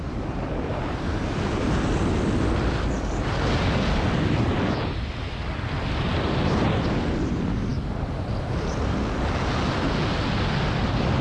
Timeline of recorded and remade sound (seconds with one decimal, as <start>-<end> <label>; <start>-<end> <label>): 0.0-11.2 recorded